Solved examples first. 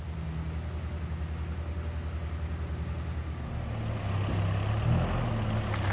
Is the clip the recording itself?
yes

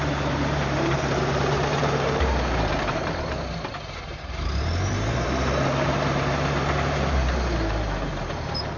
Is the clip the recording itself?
no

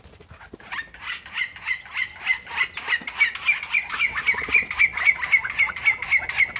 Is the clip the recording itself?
yes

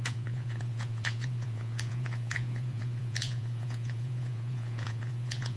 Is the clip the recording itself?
no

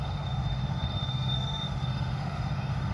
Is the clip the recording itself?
no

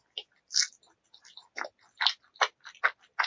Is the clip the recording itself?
yes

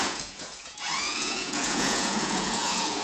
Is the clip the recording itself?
no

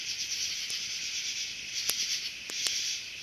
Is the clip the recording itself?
yes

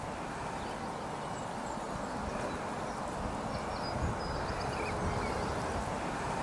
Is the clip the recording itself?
yes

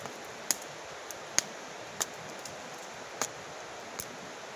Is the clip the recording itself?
yes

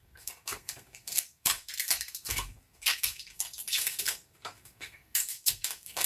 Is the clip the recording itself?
no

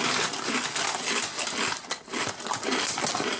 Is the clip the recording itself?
yes